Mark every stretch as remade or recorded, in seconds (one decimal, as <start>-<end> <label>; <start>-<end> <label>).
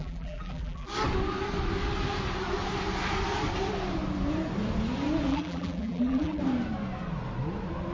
0.0-0.9 remade; 0.9-5.3 recorded; 5.3-6.4 remade; 6.4-7.9 recorded